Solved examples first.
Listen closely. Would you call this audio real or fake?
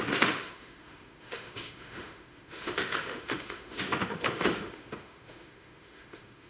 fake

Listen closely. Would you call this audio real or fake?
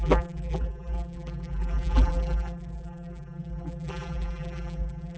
fake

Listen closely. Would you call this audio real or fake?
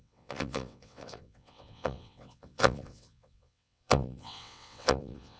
fake